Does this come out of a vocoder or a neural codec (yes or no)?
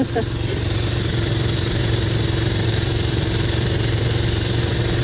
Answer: yes